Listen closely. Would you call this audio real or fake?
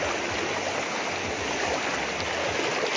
real